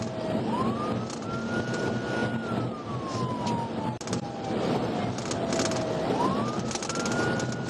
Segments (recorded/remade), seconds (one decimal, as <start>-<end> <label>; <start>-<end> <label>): 0.0-7.7 recorded